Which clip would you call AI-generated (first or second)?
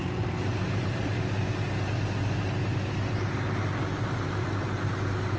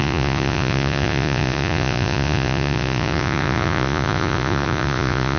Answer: second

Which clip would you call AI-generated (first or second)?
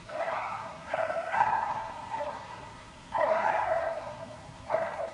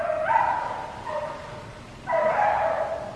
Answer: first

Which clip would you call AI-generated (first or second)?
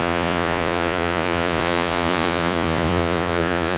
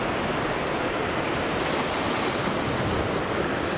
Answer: first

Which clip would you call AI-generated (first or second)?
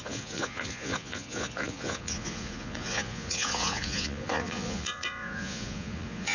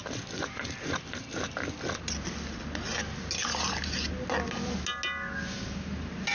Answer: first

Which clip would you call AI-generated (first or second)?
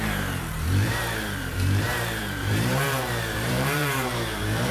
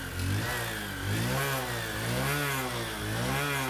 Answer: first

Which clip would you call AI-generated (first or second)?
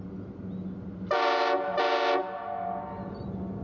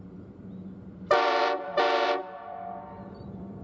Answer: second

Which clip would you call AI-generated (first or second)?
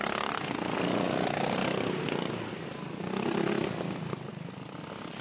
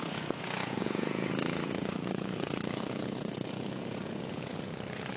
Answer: second